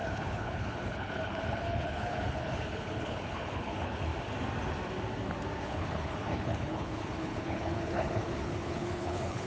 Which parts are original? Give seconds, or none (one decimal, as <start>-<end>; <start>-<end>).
4.1-5.6